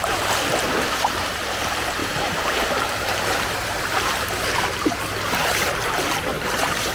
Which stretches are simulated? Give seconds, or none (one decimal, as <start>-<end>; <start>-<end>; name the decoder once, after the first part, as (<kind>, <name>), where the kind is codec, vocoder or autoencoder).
0.0-6.9 (vocoder, BigVGAN v2)